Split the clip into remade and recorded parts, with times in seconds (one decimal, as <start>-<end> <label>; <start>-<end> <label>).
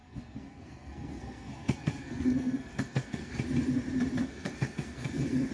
0.0-3.3 remade; 3.3-4.2 recorded; 4.2-5.5 remade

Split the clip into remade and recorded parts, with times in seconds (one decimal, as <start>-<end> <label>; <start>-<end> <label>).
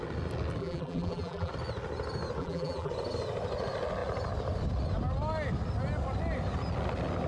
0.0-0.6 recorded; 0.6-1.5 remade; 1.5-2.4 recorded; 2.4-2.9 remade; 2.9-7.3 recorded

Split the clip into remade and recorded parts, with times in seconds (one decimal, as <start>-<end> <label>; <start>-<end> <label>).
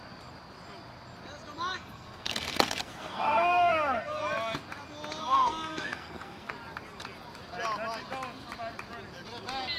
0.0-1.7 recorded; 1.7-4.2 remade; 4.2-5.2 recorded; 5.2-6.5 remade; 6.5-9.8 recorded